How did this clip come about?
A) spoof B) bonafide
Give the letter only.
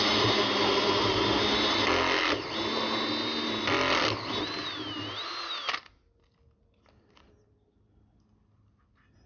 B